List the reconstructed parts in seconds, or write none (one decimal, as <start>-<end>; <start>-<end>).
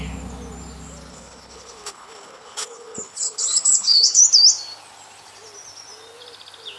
1.1-4.2